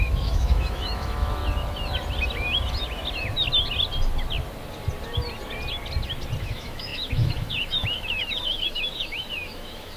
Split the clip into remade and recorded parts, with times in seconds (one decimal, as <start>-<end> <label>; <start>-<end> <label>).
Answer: 0.0-1.4 remade; 1.4-6.4 recorded; 6.4-10.0 remade